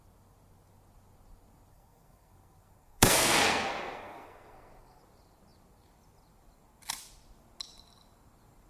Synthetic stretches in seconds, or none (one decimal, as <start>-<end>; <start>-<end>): 1.7-5.0